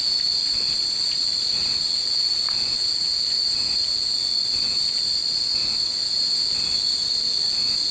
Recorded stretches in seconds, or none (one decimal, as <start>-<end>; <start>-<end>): 0.0-0.8; 1.6-3.4; 4.5-5.2; 7.2-7.9